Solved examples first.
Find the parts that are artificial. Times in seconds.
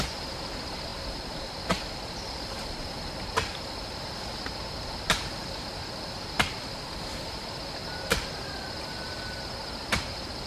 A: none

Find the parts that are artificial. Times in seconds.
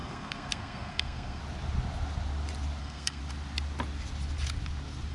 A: 0.0-1.4; 2.8-3.2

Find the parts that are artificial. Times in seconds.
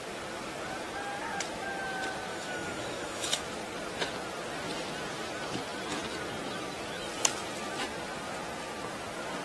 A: 2.3-3.4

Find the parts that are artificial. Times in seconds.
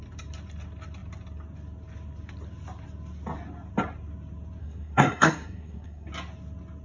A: 4.6-6.1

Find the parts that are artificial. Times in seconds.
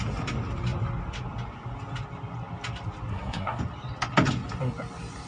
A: 3.1-3.6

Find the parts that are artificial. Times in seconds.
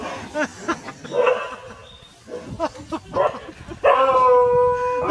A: none